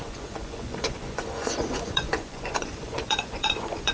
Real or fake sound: fake